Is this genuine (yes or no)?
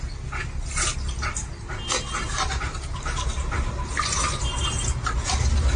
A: yes